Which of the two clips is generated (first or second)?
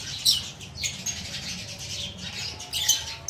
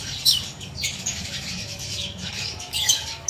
second